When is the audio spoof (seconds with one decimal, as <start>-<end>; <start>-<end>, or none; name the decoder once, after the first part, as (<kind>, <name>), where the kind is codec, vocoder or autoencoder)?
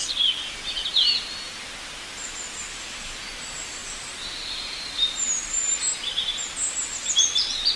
none